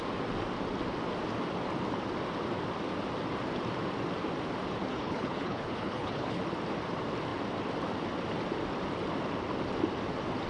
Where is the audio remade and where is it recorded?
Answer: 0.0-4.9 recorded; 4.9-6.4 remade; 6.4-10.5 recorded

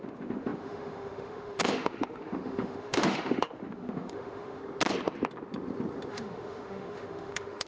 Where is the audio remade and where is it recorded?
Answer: 0.0-4.6 remade; 4.6-6.1 recorded; 6.1-7.7 remade

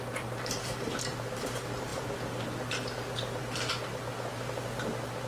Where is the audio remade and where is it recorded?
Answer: 0.0-5.3 recorded

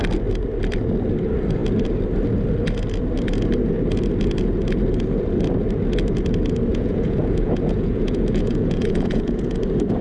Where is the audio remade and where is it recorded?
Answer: 0.0-6.7 recorded; 6.7-9.6 remade; 9.6-10.0 recorded

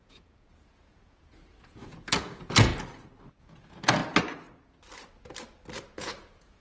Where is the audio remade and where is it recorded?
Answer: 0.0-2.7 remade; 2.7-3.4 recorded; 3.4-4.0 remade; 4.0-5.9 recorded; 5.9-6.6 remade